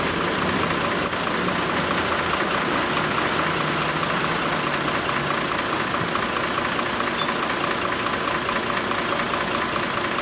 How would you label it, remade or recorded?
recorded